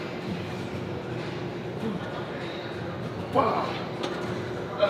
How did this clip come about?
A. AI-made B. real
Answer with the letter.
B